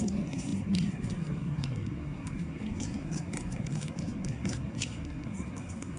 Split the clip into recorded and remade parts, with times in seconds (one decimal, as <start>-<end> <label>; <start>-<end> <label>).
0.0-6.0 remade